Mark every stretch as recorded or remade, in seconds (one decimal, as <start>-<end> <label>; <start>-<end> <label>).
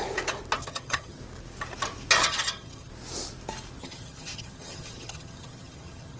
0.0-0.6 recorded; 0.6-1.2 remade; 1.2-2.2 recorded; 2.2-2.9 remade; 2.9-3.8 recorded; 3.8-6.2 remade